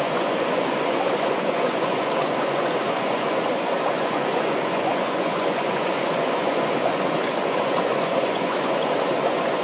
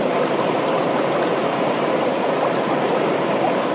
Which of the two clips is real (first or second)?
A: second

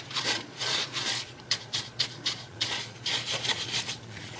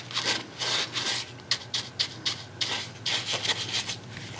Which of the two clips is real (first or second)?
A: second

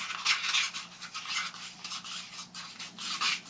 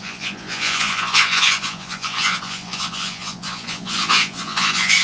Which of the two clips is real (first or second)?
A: first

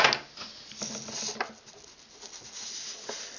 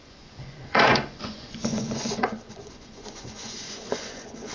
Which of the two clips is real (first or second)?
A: first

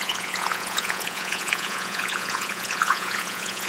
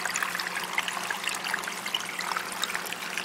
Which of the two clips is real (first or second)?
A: second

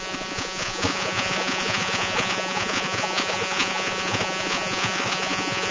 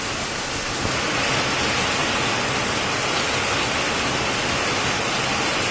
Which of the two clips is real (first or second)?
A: second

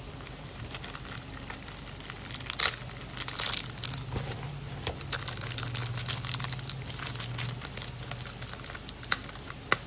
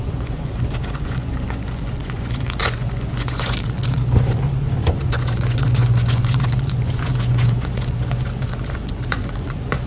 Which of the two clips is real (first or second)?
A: first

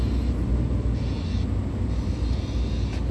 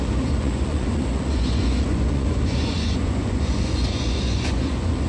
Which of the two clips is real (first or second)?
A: first